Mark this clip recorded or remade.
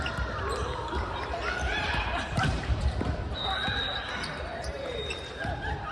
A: remade